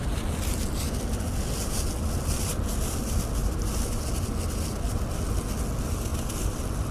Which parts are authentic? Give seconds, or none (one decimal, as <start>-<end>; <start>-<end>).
0.0-3.4; 4.1-6.1